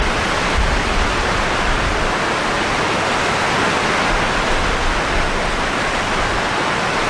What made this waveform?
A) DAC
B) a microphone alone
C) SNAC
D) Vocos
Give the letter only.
B